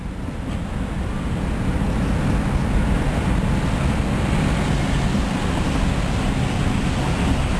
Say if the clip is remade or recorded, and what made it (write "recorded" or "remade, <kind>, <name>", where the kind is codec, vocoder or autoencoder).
recorded